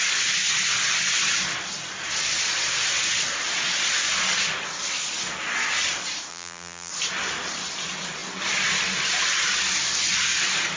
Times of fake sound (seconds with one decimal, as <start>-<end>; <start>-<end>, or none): 6.3-6.9